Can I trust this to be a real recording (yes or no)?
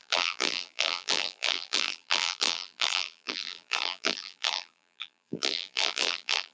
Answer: no